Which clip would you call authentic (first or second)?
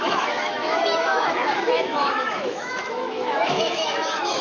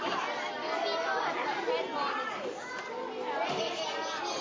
second